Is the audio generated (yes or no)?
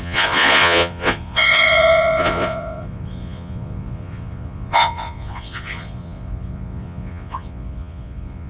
yes